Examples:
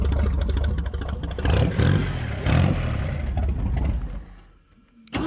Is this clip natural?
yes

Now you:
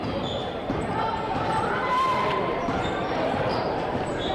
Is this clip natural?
no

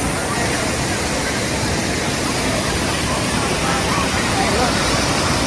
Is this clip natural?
yes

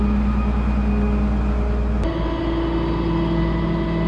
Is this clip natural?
yes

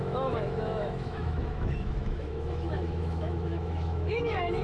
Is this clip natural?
no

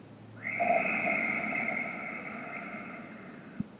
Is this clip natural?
yes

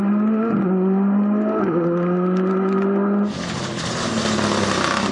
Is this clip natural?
yes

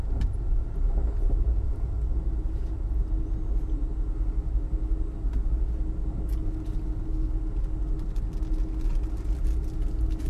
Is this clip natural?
yes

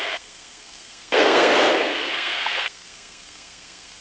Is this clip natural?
no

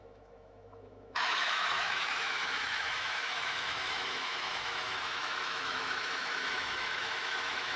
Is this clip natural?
no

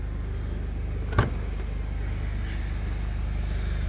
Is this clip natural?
yes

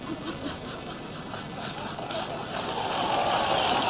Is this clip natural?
yes